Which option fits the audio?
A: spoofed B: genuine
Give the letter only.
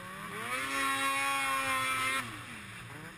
B